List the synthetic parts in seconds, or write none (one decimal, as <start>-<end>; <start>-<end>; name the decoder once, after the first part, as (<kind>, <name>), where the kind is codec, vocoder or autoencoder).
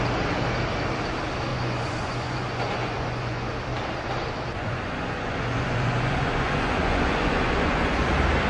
1.5-3.5 (vocoder, Vocos); 4.5-8.1